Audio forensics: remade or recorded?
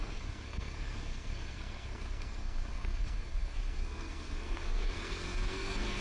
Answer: remade